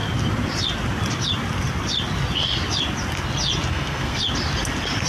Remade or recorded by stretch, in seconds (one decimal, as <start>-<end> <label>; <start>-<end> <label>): 0.0-3.7 recorded; 3.7-4.2 remade; 4.2-5.1 recorded

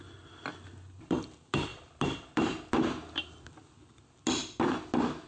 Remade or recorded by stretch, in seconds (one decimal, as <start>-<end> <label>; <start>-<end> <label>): 0.0-5.3 recorded

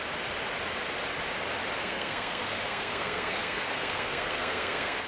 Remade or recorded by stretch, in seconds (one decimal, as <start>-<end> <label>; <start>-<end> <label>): 0.0-1.8 recorded; 1.8-5.1 remade

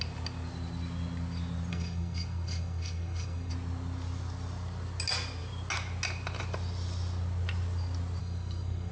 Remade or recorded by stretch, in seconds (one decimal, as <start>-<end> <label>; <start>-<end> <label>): 0.0-1.7 recorded; 1.7-3.5 remade; 3.5-8.2 recorded; 8.2-8.9 remade

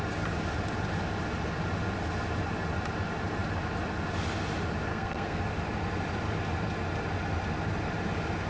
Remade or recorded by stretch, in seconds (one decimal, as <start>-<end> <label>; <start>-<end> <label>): 0.0-4.9 recorded; 4.9-5.4 remade; 5.4-8.5 recorded

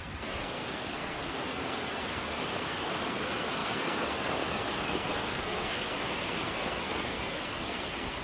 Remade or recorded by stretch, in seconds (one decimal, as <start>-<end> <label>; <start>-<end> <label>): 0.0-8.2 remade